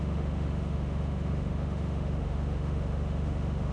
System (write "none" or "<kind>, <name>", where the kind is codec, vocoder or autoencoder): autoencoder, DAC-VAE